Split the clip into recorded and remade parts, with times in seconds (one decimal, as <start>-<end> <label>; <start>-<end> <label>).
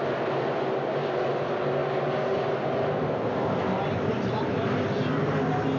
0.0-5.8 recorded